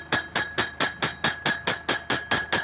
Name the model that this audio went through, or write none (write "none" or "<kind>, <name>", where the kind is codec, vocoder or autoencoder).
none